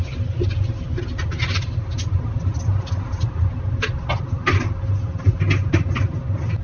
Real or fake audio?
real